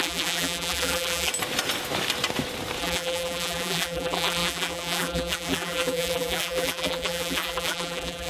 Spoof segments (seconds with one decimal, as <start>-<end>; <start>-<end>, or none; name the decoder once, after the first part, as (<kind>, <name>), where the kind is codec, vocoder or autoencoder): 0.0-1.3 (vocoder, BigVGAN v2); 2.8-8.3